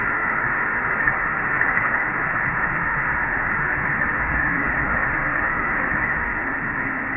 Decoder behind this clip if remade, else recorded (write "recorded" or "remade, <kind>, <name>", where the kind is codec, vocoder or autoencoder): remade, autoencoder, DAC-VAE